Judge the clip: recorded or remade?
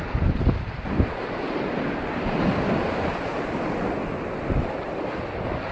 recorded